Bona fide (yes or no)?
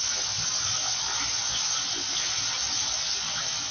yes